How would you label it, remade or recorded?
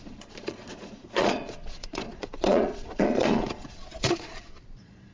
remade